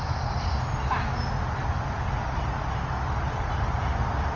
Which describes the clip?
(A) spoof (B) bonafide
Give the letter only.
B